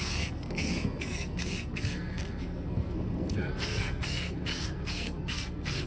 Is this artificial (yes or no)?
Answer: yes